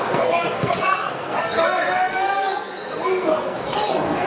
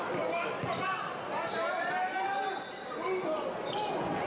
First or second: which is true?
second